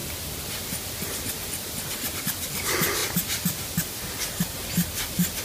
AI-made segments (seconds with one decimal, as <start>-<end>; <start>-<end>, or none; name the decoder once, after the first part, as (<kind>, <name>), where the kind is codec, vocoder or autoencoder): none